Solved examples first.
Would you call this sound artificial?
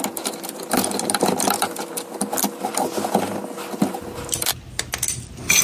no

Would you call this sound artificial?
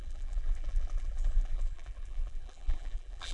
yes